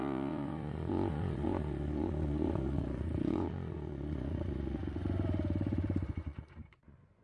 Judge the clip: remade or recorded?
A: remade